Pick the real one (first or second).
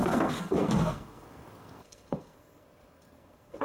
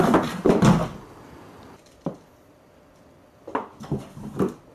second